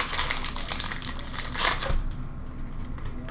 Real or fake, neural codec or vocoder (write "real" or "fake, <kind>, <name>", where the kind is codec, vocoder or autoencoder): real